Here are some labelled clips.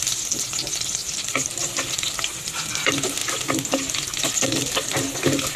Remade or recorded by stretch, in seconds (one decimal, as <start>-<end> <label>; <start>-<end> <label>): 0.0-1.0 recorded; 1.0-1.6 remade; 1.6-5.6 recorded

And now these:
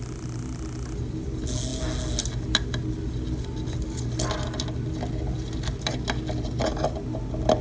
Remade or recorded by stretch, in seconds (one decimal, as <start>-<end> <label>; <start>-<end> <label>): 0.0-7.6 recorded

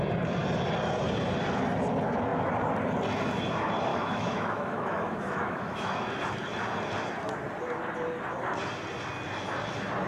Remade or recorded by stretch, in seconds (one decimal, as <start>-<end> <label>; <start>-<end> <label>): 0.0-3.9 recorded; 3.9-5.9 remade; 5.9-10.1 recorded